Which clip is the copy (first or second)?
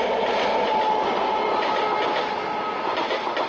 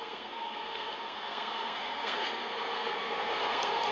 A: second